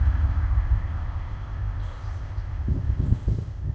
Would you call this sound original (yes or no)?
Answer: no